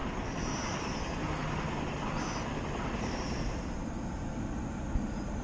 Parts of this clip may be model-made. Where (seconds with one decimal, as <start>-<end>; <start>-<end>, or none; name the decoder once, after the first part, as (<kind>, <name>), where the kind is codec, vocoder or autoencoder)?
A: none